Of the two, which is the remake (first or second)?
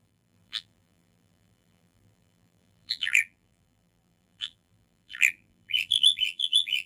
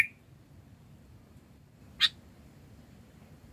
first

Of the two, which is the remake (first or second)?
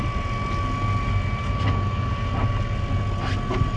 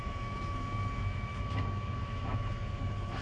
second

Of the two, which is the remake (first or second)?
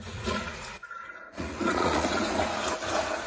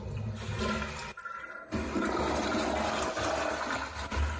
first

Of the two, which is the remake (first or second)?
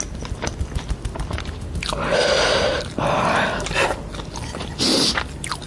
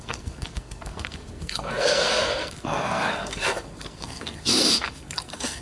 second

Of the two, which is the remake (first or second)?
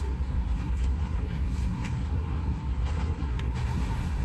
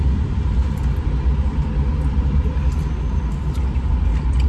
first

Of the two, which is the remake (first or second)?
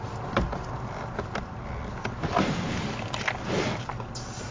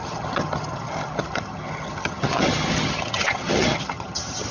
second